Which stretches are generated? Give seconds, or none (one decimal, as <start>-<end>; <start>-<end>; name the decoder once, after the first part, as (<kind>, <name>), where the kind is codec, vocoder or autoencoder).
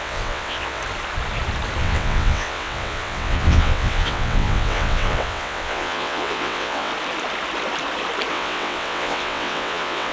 0.0-0.8 (vocoder, WaveNeXt); 1.8-6.9; 8.3-10.1